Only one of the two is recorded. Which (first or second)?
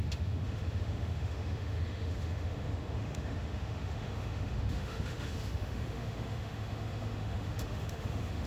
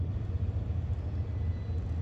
second